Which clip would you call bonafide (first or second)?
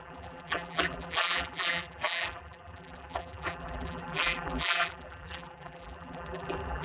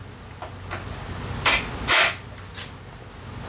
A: second